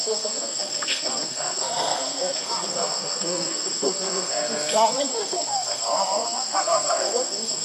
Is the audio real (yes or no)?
no